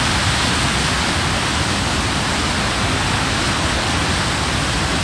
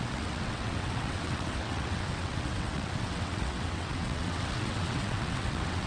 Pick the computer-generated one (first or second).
second